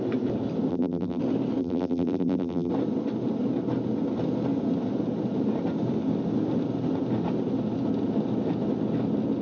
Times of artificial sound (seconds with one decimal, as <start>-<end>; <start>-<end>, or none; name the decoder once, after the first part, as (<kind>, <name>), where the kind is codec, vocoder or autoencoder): 0.7-1.2 (vocoder, BigVGAN v2); 1.6-2.7